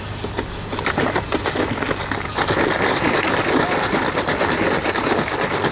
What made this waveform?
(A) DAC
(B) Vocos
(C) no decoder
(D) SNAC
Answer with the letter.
C